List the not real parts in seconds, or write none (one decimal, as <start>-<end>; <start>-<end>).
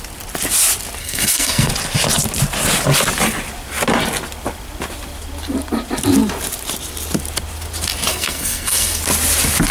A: 1.0-1.7; 8.1-9.0